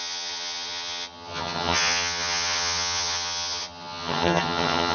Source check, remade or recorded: remade